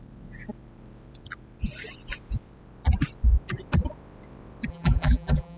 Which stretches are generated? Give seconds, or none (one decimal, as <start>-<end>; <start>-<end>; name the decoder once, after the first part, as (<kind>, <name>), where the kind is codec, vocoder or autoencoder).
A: 4.7-5.6 (vocoder, BigVGAN v2)